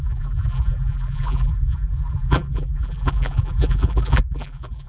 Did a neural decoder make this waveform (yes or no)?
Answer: yes